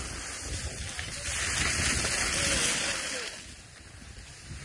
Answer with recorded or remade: recorded